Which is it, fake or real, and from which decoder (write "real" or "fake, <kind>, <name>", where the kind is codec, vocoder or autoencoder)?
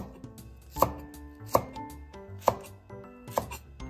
real